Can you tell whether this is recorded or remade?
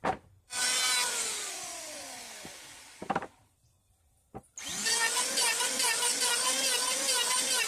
recorded